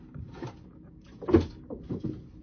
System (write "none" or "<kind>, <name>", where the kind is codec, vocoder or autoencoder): none